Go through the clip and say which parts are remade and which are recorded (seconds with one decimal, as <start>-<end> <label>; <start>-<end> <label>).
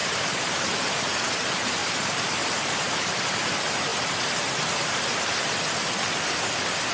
0.0-1.0 remade; 1.0-1.8 recorded; 1.8-3.3 remade; 3.3-6.9 recorded